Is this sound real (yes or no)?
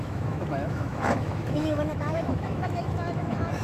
no